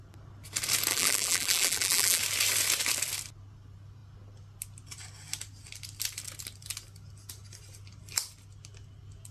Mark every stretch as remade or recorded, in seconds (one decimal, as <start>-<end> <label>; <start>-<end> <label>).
0.0-0.9 recorded; 0.9-2.2 remade; 2.2-9.3 recorded